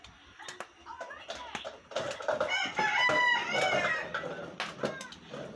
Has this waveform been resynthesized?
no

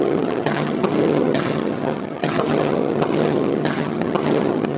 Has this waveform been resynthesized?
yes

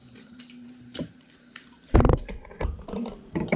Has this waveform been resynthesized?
yes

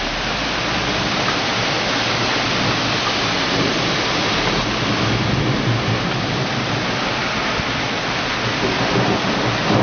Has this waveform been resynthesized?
no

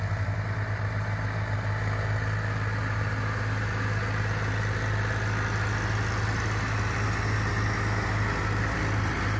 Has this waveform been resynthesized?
no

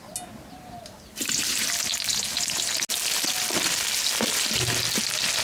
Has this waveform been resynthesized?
no